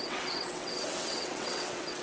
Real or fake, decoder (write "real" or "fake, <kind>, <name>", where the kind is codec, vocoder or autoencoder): fake, vocoder, WaveNeXt